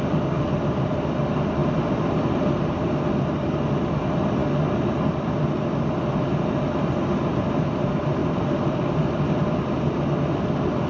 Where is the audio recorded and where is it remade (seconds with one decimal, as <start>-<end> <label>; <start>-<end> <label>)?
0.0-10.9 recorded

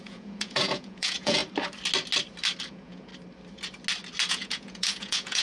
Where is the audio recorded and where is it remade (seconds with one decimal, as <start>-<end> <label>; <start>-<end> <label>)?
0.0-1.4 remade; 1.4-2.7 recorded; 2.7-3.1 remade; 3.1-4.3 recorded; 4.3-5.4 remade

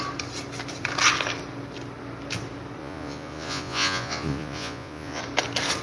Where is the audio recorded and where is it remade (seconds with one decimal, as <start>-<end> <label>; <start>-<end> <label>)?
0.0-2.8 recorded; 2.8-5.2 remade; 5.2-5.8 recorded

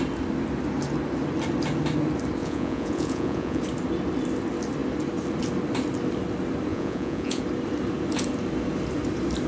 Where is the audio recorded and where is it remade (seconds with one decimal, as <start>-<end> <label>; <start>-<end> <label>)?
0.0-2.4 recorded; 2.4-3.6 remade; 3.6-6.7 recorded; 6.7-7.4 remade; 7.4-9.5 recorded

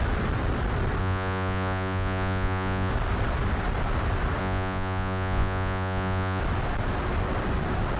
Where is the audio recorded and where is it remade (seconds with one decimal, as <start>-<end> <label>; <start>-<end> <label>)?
0.0-1.0 recorded; 1.0-2.9 remade; 2.9-4.4 recorded; 4.4-6.4 remade; 6.4-8.0 recorded

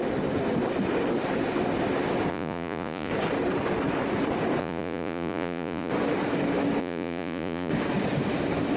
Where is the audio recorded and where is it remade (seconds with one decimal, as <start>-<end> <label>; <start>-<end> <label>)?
0.0-2.3 recorded; 2.3-3.1 remade; 3.1-4.6 recorded; 4.6-5.9 remade; 5.9-6.8 recorded; 6.8-7.7 remade; 7.7-8.8 recorded

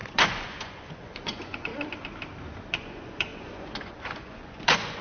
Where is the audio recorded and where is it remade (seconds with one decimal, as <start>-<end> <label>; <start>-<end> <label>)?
0.0-1.7 remade; 1.7-2.7 recorded; 2.7-5.0 remade

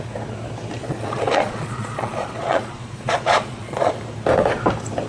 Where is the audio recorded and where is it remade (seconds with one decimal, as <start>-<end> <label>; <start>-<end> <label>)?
0.0-0.8 recorded; 0.8-3.9 remade; 3.9-5.1 recorded